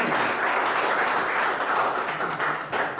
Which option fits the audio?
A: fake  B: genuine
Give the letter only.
B